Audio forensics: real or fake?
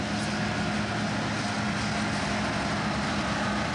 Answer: real